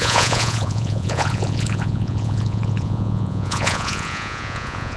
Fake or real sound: fake